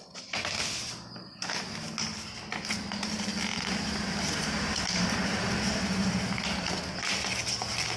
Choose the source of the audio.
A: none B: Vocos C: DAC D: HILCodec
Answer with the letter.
A